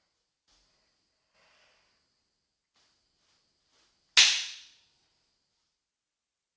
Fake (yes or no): no